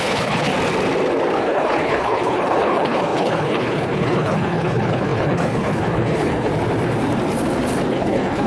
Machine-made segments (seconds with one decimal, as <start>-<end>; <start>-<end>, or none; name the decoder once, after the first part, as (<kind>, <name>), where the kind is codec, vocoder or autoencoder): 0.0-0.5 (codec, HILCodec); 1.4-6.5; 7.9-8.5